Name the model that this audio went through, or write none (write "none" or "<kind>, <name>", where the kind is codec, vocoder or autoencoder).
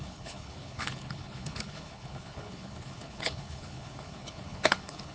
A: codec, HILCodec